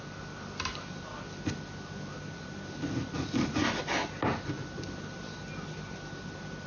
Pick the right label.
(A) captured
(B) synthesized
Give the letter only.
A